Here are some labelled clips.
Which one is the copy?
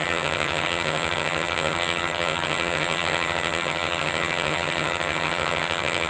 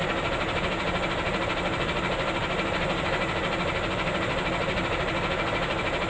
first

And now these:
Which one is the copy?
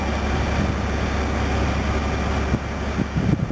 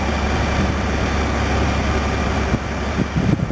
second